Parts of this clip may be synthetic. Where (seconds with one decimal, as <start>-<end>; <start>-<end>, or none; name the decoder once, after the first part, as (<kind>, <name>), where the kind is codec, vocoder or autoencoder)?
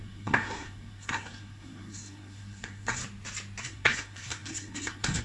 0.0-3.0 (codec, SNAC); 3.6-5.2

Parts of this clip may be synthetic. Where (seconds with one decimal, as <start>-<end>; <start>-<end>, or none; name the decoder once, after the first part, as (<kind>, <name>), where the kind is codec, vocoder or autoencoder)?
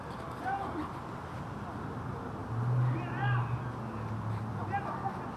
none